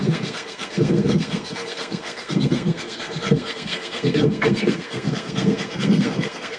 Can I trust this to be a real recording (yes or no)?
no